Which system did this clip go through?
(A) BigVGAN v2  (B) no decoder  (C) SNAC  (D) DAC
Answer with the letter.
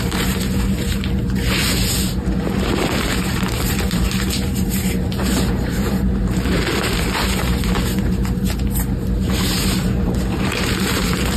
A